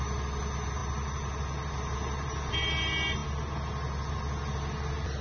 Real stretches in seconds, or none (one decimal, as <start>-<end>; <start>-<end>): 0.0-5.2